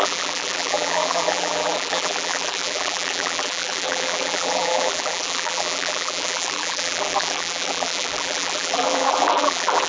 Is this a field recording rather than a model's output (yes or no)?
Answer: no